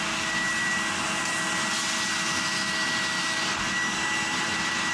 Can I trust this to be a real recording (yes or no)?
yes